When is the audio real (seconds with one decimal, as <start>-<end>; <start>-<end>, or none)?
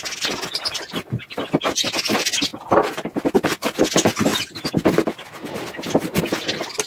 0.0-6.9